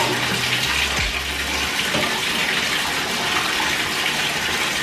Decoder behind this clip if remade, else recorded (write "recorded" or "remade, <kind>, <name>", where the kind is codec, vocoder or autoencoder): recorded